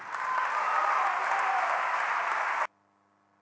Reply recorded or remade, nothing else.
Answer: recorded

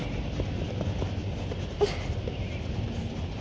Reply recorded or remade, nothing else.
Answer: recorded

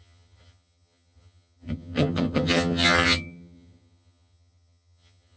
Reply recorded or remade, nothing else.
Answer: remade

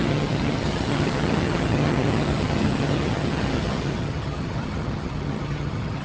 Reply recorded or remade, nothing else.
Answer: remade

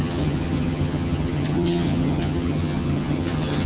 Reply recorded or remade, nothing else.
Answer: remade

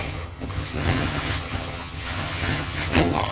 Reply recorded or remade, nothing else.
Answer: remade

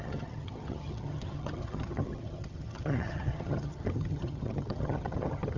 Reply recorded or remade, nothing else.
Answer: remade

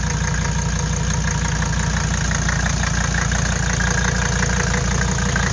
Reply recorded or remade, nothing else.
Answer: recorded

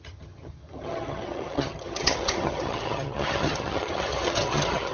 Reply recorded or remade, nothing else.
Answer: remade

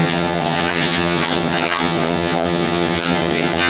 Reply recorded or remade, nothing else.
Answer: remade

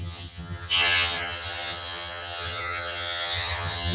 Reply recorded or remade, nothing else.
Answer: remade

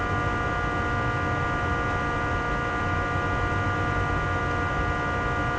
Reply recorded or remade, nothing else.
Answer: recorded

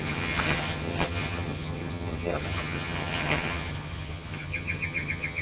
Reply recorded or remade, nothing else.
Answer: remade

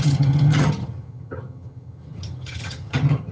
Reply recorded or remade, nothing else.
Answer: remade